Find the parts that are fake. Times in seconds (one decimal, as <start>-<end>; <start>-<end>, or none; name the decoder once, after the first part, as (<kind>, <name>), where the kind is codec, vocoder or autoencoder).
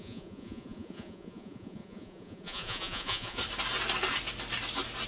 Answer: 0.0-3.4 (vocoder, Vocos)